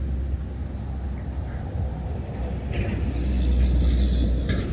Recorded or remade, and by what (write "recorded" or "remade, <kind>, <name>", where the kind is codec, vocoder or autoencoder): recorded